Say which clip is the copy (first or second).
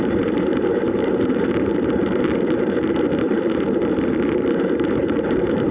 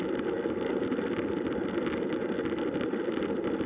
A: first